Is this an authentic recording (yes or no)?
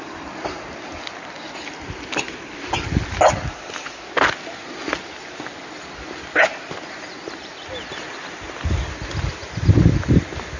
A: yes